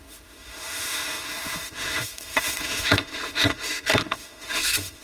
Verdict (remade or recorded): remade